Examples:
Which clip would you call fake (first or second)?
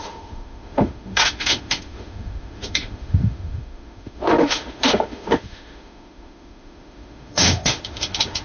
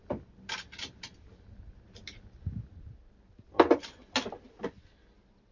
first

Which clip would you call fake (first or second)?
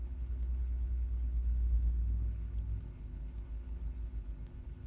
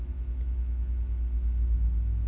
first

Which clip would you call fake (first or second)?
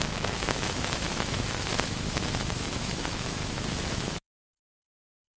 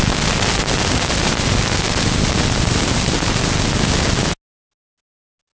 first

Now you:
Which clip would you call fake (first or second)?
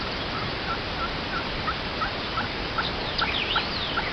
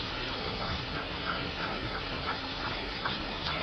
second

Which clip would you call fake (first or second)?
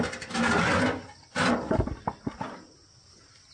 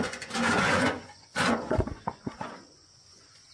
second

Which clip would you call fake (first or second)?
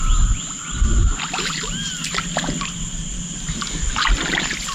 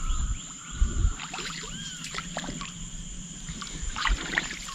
second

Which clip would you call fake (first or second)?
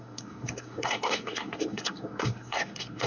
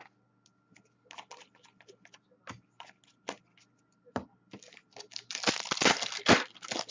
first